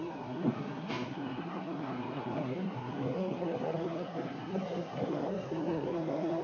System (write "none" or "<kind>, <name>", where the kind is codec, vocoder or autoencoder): codec, SNAC